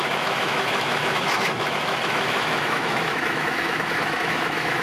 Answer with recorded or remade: remade